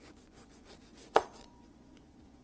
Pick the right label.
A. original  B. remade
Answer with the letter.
B